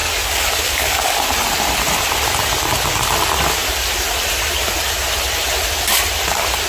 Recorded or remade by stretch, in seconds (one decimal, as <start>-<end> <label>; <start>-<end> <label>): 0.0-1.2 remade; 1.2-6.7 recorded